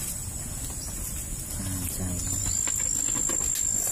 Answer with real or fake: real